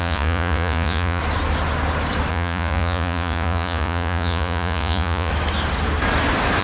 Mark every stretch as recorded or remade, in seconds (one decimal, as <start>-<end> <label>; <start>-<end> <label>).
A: 0.0-1.2 remade; 1.2-2.3 recorded; 2.3-5.3 remade; 5.3-6.6 recorded